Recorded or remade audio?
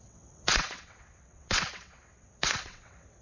remade